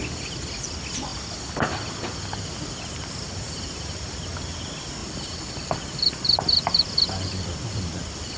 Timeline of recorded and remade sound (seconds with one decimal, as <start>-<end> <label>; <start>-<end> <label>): 0.0-5.0 recorded; 5.0-8.4 remade

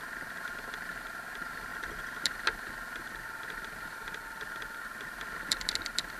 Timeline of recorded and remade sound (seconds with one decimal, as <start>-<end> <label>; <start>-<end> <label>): 0.0-6.2 recorded

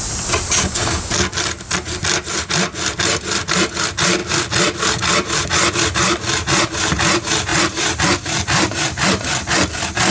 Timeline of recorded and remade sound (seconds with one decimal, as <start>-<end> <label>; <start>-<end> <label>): 0.0-10.1 recorded

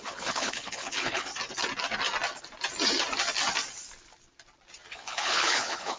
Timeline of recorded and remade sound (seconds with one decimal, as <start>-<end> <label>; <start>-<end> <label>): 0.0-1.3 remade; 1.3-4.9 recorded; 4.9-6.0 remade

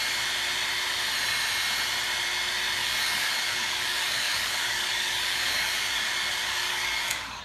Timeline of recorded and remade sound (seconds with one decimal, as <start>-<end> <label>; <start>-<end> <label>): 0.0-2.8 recorded; 2.8-7.4 remade

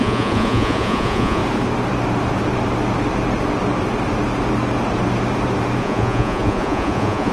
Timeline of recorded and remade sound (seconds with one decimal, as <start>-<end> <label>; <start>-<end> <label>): 0.0-1.4 remade; 1.4-5.8 recorded; 5.8-7.3 remade

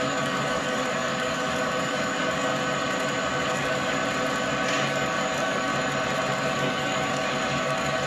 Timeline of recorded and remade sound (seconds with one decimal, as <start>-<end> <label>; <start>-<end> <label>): 0.0-2.5 remade; 2.5-3.4 recorded; 3.4-4.0 remade; 4.0-4.7 recorded; 4.7-5.7 remade; 5.7-6.3 recorded; 6.3-8.1 remade